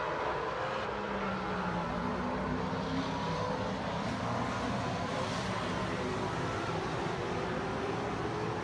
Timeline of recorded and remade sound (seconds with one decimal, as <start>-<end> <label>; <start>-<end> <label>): 0.0-8.6 recorded